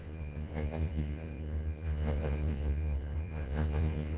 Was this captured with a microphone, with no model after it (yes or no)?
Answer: no